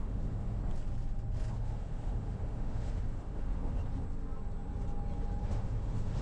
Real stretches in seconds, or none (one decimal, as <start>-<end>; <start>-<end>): 0.6-1.5; 3.8-5.4